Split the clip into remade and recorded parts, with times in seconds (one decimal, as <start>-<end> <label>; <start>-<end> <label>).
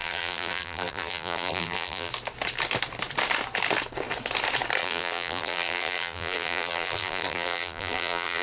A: 0.0-2.1 remade; 2.1-4.8 recorded; 4.8-8.4 remade